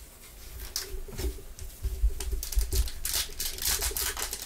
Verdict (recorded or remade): recorded